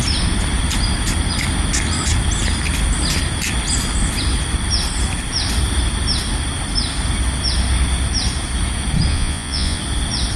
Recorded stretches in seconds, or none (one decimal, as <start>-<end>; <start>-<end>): 0.0-9.1; 9.8-10.4